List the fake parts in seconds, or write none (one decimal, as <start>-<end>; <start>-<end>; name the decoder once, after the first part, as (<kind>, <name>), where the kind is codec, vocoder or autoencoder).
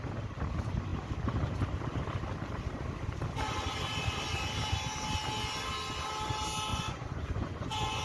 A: 6.7-8.0 (vocoder, Vocos)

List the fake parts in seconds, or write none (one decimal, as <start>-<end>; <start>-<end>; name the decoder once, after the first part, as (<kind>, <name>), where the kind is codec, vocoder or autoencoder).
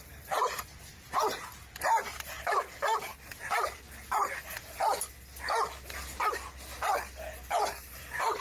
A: none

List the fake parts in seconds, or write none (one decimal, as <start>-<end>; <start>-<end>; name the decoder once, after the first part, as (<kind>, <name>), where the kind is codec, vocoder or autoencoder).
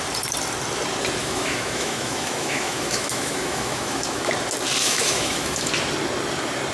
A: 1.2-4.3 (autoencoder, DAC-VAE); 4.8-5.7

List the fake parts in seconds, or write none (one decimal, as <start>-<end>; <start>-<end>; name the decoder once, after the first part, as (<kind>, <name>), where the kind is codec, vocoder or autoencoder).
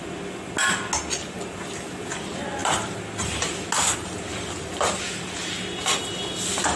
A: none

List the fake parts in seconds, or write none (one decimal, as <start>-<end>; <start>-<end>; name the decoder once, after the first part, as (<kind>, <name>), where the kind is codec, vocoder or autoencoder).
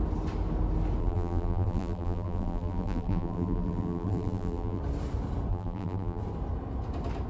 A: 1.0-4.8 (vocoder, BigVGAN v2); 5.5-6.2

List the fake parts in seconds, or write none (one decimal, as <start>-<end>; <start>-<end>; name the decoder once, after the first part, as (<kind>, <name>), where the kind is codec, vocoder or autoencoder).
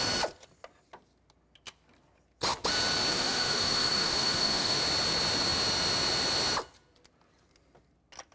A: 3.1-4.8 (autoencoder, DAC-VAE)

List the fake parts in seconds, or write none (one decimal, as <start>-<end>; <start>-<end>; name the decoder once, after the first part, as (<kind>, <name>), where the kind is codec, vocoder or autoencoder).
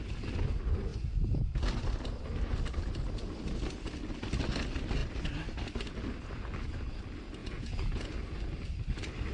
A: 7.4-8.1 (vocoder, Vocos)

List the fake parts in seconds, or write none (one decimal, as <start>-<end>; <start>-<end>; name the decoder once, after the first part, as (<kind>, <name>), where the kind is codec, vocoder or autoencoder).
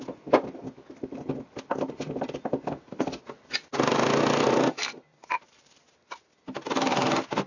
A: 5.1-5.8 (vocoder, BigVGAN v2)